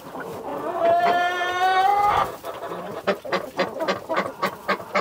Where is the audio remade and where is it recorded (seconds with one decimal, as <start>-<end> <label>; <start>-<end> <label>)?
0.0-0.5 remade; 0.5-1.0 recorded; 1.0-1.9 remade; 1.9-5.0 recorded